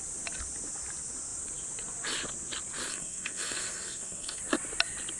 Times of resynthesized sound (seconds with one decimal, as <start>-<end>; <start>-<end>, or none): 2.9-4.4